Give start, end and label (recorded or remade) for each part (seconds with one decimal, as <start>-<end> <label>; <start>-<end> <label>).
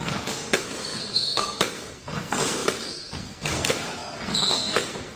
0.0-5.2 remade